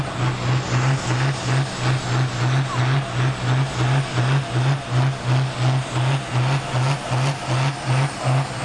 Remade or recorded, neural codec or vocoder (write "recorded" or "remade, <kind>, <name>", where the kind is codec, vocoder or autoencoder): recorded